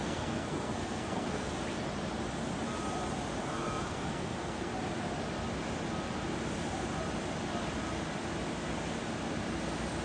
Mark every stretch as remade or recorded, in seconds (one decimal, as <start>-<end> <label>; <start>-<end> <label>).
0.0-1.5 remade; 1.5-3.4 recorded; 3.4-4.7 remade; 4.7-10.0 recorded